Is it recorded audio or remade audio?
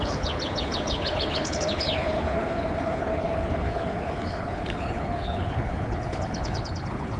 remade